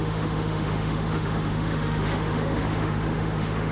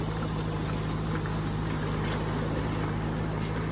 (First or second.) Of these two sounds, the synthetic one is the first